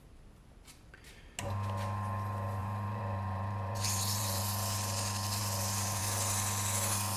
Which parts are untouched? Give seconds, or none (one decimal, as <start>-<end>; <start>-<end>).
0.0-2.6; 4.4-5.4; 6.0-7.2